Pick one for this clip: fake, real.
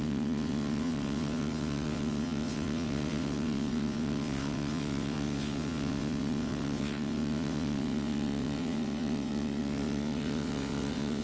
fake